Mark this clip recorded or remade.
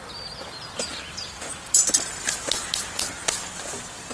recorded